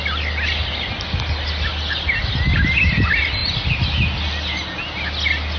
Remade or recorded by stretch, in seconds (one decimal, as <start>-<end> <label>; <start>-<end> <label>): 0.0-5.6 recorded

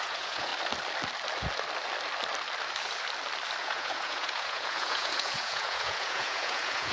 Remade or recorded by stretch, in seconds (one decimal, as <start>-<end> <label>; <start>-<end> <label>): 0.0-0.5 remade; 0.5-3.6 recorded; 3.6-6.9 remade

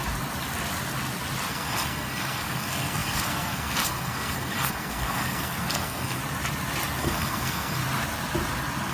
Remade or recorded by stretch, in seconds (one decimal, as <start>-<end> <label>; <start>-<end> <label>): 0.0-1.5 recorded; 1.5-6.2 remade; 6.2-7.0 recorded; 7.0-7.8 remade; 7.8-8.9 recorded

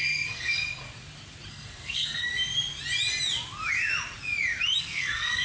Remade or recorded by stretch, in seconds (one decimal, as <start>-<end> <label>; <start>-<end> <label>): 0.0-0.8 remade; 0.8-1.5 recorded; 1.5-2.3 remade; 2.3-4.8 recorded; 4.8-5.4 remade

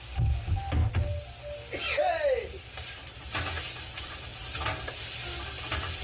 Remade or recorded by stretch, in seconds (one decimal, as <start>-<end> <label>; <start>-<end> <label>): 0.0-0.8 remade; 0.8-2.7 recorded; 2.7-6.0 remade

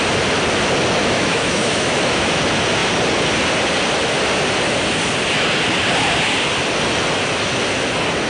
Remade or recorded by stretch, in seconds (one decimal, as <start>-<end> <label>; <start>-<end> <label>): 0.0-1.0 recorded; 1.0-2.4 remade; 2.4-8.3 recorded

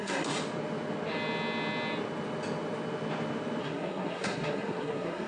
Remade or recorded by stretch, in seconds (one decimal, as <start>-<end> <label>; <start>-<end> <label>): 0.0-0.4 remade; 0.4-3.6 recorded; 3.6-5.3 remade